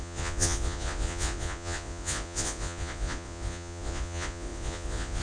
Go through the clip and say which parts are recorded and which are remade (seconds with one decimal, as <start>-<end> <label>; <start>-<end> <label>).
0.0-5.2 remade

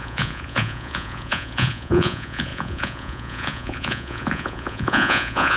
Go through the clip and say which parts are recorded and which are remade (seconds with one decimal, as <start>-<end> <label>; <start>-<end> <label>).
0.0-5.6 remade

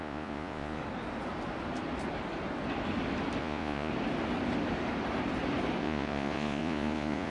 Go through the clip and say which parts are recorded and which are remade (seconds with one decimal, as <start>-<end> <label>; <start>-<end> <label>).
0.0-0.8 remade; 0.8-3.4 recorded; 3.4-3.9 remade; 3.9-5.8 recorded; 5.8-7.3 remade

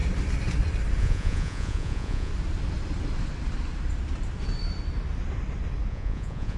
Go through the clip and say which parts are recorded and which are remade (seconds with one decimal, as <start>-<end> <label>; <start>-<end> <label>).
0.0-1.0 recorded; 1.0-2.3 remade; 2.3-5.9 recorded; 5.9-6.6 remade

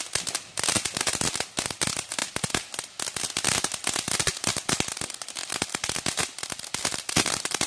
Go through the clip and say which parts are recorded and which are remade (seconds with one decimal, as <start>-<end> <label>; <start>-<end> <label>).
0.0-7.7 recorded

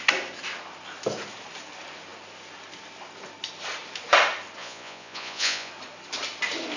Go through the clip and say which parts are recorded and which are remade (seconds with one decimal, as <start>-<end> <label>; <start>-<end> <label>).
0.0-4.6 recorded; 4.6-5.7 remade; 5.7-6.8 recorded